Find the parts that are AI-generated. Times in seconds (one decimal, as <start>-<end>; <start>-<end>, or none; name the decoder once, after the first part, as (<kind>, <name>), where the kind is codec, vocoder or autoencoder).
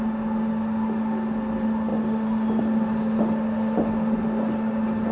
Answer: none